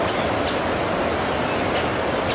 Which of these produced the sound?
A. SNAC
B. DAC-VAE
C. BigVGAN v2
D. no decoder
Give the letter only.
D